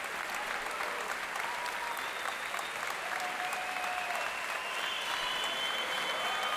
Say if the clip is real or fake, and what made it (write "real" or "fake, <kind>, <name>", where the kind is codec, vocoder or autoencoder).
real